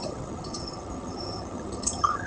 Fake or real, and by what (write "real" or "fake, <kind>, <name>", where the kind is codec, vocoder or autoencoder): fake, vocoder, HiFi-GAN